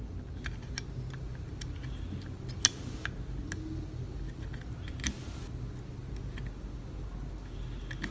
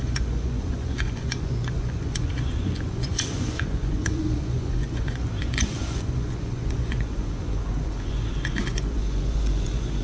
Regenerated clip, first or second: second